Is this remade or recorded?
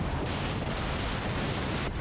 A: recorded